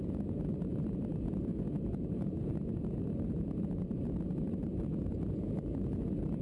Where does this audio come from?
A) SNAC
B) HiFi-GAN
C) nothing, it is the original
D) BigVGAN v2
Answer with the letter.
D